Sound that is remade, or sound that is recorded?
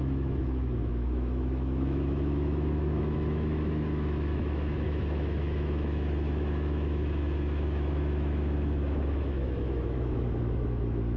remade